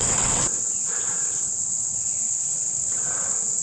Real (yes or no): no